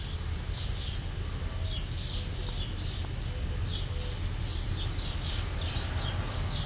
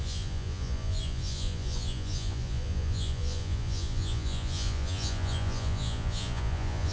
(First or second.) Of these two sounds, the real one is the first